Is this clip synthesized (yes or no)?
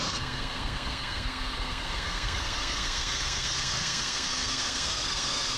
yes